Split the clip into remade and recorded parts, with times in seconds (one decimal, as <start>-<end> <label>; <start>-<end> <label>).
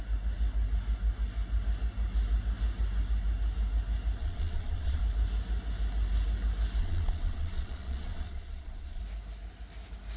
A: 0.0-4.2 recorded; 4.2-5.0 remade; 5.0-6.8 recorded; 6.8-9.0 remade; 9.0-10.2 recorded